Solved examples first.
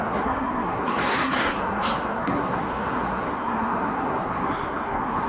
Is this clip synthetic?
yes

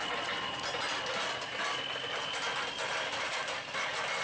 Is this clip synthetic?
no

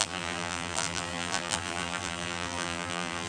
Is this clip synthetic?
yes